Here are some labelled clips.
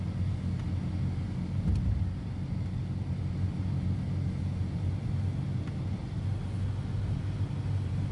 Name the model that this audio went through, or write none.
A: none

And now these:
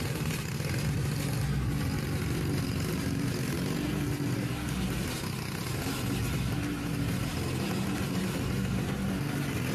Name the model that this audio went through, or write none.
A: none